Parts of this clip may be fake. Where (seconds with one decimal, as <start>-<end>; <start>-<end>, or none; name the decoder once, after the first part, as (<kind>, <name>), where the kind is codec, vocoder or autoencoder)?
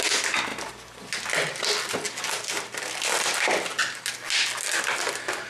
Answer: none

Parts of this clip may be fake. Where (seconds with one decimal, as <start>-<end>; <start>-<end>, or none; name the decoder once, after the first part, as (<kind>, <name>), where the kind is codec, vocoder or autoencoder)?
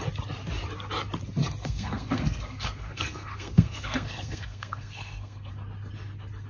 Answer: 1.6-5.5 (codec, SNAC)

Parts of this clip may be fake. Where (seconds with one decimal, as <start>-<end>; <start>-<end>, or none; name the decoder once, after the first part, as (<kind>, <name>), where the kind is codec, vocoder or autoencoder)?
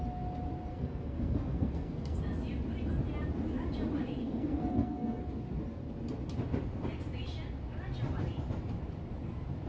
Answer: 0.7-2.2 (codec, SNAC); 4.2-5.2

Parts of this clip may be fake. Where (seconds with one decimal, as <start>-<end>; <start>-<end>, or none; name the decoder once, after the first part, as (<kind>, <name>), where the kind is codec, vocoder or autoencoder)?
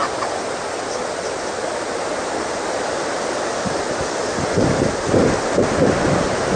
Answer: none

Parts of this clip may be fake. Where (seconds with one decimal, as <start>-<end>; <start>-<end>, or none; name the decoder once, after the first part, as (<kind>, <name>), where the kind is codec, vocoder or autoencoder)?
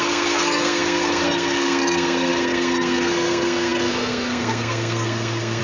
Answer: 0.0-5.6 (codec, SNAC)